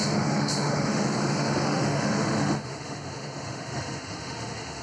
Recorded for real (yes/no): no